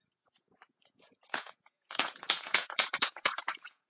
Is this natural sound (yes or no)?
no